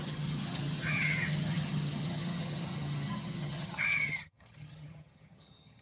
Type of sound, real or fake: fake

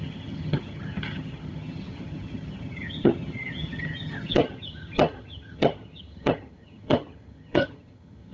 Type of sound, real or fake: fake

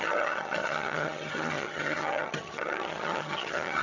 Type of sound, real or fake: fake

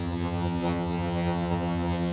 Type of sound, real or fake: fake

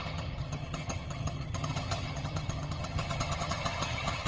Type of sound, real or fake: fake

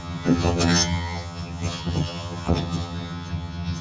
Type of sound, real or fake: fake